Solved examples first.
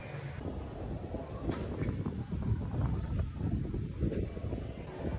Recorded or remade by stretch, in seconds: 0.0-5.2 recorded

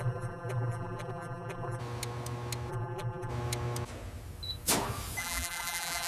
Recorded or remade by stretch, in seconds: 0.0-1.8 remade; 1.8-2.7 recorded; 2.7-3.3 remade; 3.3-5.2 recorded; 5.2-6.1 remade